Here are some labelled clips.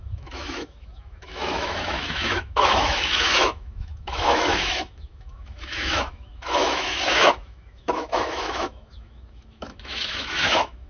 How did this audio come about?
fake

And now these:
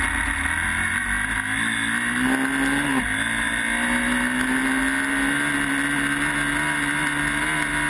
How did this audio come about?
real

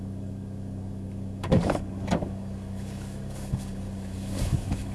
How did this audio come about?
fake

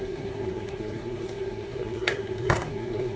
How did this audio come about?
fake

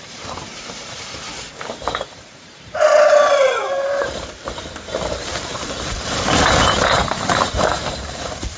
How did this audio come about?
fake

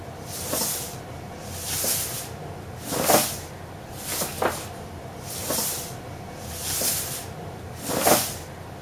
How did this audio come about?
fake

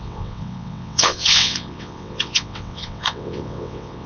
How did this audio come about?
fake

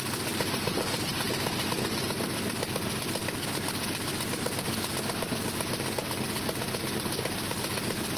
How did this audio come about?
real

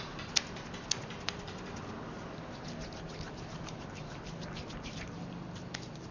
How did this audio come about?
real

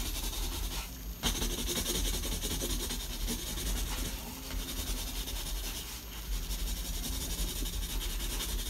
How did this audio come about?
real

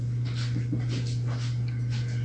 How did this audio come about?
real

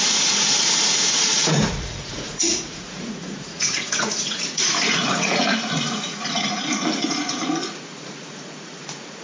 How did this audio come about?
fake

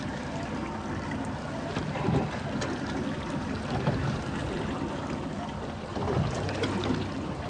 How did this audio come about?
real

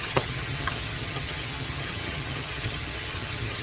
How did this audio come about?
fake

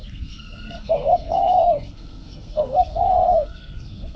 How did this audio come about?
fake